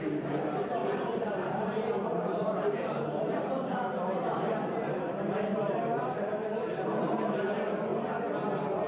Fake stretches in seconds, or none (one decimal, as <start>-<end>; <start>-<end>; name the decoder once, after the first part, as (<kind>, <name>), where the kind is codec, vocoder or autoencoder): 0.0-7.9 (vocoder, BigVGAN v2)